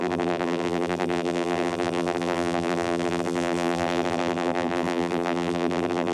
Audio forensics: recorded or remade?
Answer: remade